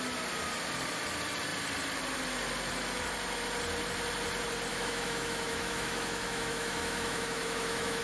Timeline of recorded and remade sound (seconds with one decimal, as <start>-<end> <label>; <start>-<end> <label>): 0.0-4.7 recorded; 4.7-8.0 remade